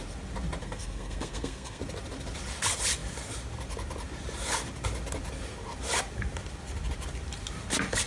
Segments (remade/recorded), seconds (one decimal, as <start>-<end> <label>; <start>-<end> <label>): 0.0-0.6 recorded; 0.6-1.8 remade; 1.8-8.1 recorded